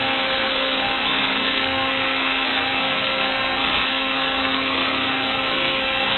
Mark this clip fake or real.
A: fake